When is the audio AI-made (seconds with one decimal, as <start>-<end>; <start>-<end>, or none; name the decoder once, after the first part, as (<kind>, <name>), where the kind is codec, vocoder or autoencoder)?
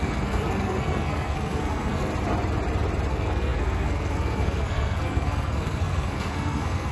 0.0-2.1 (codec, SNAC); 3.1-6.9